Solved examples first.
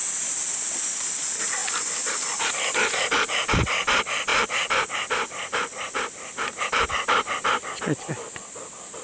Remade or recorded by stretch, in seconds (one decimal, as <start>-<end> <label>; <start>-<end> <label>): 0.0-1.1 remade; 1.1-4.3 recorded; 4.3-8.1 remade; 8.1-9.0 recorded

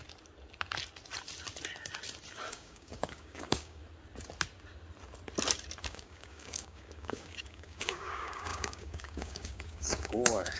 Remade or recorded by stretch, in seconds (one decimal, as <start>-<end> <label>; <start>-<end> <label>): 0.0-2.5 recorded; 2.5-3.8 remade; 3.8-5.8 recorded; 5.8-10.6 remade

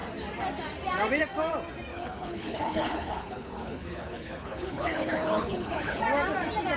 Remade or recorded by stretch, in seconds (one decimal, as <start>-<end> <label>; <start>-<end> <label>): 0.0-1.9 recorded; 1.9-6.0 remade; 6.0-6.8 recorded

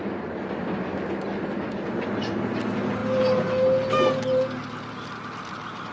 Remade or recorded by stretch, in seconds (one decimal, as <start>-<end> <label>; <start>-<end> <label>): 0.0-5.9 recorded

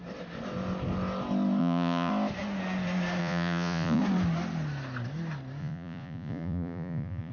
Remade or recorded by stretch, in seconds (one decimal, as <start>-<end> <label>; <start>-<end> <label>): 0.0-1.6 recorded; 1.6-2.1 remade; 2.1-3.2 recorded; 3.2-4.0 remade; 4.0-5.6 recorded; 5.6-7.3 remade

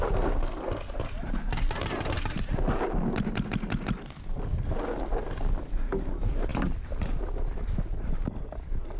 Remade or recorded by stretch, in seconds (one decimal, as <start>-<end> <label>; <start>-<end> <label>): 0.0-9.0 recorded

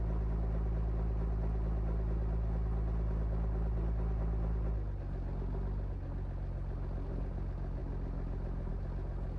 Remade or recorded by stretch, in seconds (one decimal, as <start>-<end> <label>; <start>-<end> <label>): 0.0-9.4 recorded

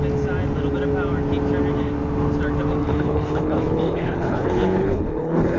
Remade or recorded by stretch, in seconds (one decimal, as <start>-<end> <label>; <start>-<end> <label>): 0.0-2.8 recorded; 2.8-5.6 remade